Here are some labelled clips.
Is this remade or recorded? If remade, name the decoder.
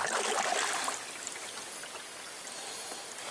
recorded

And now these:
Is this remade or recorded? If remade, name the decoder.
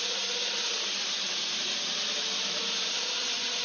remade, vocoder, BigVGAN v2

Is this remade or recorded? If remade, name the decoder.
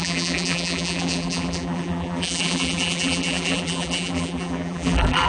remade, vocoder, BigVGAN v2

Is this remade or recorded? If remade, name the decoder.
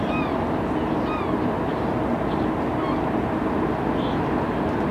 recorded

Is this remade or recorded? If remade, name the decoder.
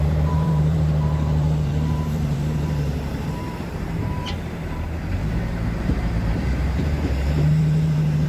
remade, vocoder, BigVGAN v2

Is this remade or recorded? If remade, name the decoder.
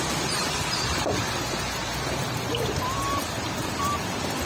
remade, vocoder, BigVGAN v2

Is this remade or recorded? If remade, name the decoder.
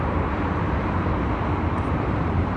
remade, vocoder, BigVGAN v2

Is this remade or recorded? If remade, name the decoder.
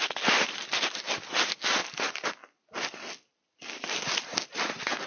recorded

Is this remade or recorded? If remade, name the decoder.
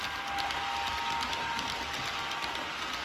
recorded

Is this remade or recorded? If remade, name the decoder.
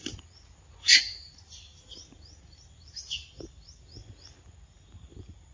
recorded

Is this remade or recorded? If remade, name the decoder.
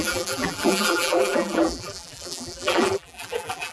remade, vocoder, BigVGAN v2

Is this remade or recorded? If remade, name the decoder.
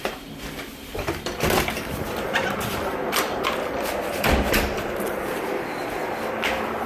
remade, vocoder, BigVGAN v2